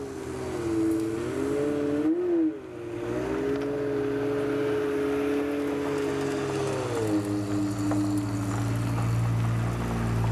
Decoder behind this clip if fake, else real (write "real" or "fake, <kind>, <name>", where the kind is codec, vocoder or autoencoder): real